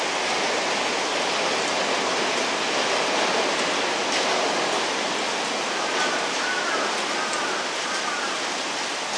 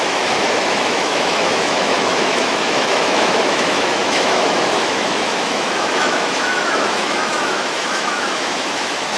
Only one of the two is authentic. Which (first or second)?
first